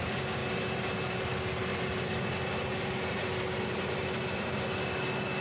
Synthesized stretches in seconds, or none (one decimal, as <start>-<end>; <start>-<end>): none